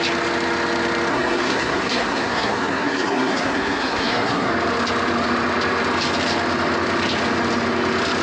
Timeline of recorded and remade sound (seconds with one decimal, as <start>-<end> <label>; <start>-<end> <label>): 0.0-1.1 recorded; 1.1-4.5 remade; 4.5-8.2 recorded